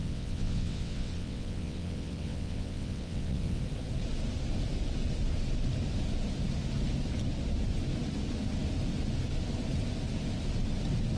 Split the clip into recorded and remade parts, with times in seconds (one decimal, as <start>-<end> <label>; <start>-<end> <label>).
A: 0.0-3.6 remade; 3.6-11.2 recorded